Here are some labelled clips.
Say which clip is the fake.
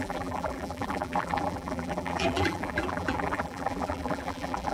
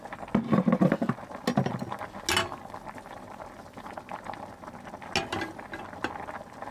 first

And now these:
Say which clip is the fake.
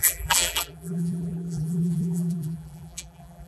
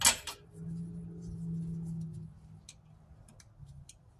first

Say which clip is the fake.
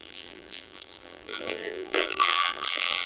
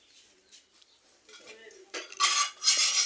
first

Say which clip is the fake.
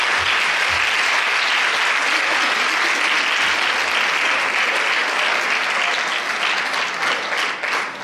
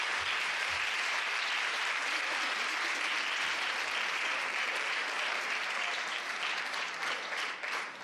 second